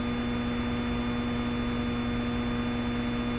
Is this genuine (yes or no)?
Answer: yes